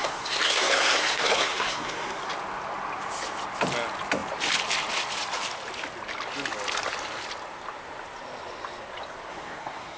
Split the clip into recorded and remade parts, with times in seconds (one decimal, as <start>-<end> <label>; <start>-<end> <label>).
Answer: 0.0-2.2 remade; 2.2-9.3 recorded; 9.3-10.0 remade